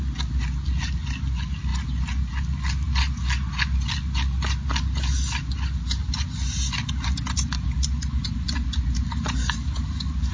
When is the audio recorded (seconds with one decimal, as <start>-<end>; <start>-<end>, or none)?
0.0-10.3

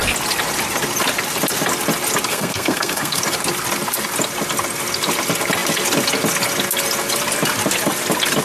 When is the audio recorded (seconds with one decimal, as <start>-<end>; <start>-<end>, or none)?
0.0-2.3; 3.2-8.4

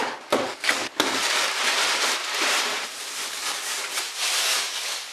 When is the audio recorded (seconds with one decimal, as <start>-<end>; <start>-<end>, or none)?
1.2-3.3; 3.9-4.4